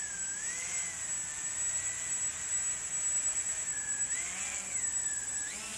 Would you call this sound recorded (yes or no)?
yes